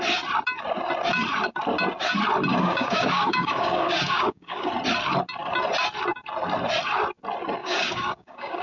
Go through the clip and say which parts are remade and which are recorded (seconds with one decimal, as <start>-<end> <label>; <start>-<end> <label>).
0.0-2.5 recorded; 2.5-4.7 remade; 4.7-7.6 recorded; 7.6-8.6 remade

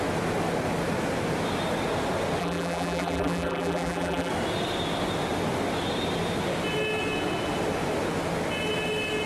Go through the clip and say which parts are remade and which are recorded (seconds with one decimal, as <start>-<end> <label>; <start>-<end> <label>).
0.0-2.4 recorded; 2.4-4.3 remade; 4.3-9.3 recorded

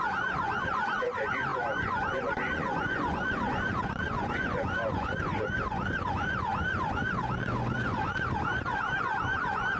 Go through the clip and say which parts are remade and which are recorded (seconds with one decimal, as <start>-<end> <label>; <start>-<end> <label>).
0.0-9.8 remade

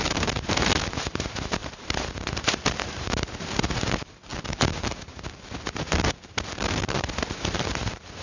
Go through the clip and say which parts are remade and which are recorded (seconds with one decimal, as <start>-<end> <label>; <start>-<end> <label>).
0.0-8.2 remade